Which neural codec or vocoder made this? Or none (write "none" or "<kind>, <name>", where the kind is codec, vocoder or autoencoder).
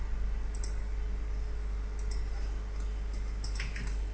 none